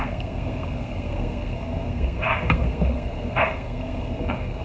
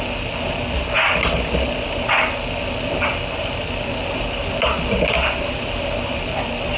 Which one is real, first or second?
second